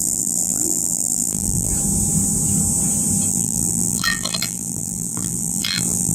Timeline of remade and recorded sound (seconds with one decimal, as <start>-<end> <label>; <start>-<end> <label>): 0.0-1.7 remade; 1.7-3.3 recorded; 3.3-6.1 remade